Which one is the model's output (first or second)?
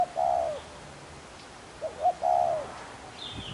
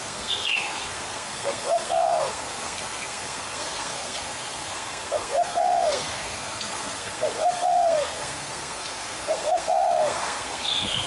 second